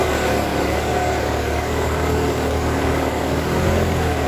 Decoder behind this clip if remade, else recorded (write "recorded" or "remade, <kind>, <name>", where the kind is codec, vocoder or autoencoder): remade, codec, DAC